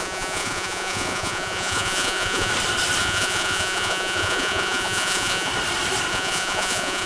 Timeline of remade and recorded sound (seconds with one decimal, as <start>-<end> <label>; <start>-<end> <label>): 0.0-2.5 remade; 2.5-3.0 recorded; 3.0-5.5 remade; 5.5-6.1 recorded; 6.1-7.1 remade